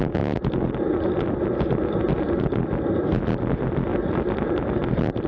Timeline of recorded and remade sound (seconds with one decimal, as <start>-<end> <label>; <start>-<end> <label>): 0.0-3.9 recorded; 3.9-4.6 remade; 4.6-5.3 recorded